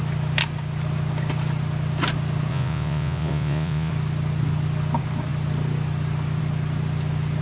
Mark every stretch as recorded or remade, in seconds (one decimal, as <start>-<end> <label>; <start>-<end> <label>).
0.0-2.5 recorded; 2.5-3.9 remade; 3.9-7.4 recorded